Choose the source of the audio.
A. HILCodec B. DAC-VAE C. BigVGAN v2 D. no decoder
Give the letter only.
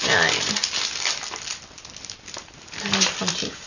D